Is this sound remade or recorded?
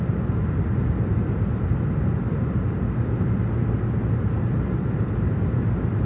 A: recorded